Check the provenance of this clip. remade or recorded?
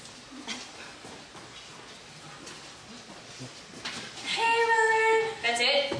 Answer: recorded